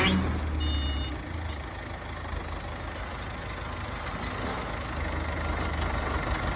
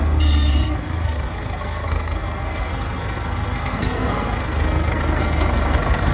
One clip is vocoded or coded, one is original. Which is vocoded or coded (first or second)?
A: second